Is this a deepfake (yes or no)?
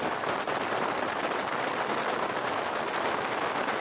no